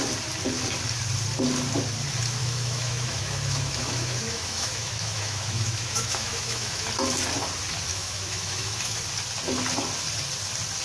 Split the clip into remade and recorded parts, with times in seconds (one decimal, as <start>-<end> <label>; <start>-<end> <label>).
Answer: 0.0-2.4 recorded; 2.4-6.9 remade; 6.9-7.9 recorded; 7.9-9.0 remade; 9.0-10.8 recorded